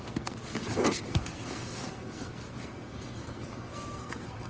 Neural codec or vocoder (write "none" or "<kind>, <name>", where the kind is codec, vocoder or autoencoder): codec, SNAC